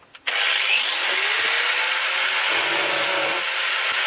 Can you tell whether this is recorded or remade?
recorded